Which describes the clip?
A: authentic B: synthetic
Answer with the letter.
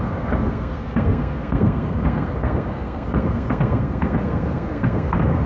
B